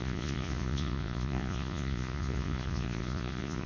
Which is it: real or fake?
fake